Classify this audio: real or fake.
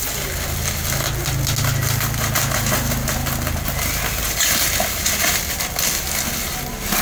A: real